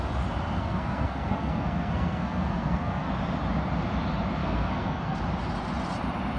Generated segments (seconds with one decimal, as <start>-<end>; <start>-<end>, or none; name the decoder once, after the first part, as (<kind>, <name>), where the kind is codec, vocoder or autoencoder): 0.6-3.1 (codec, SNAC); 4.4-5.2